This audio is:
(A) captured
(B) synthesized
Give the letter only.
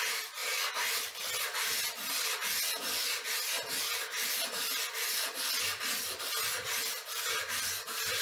A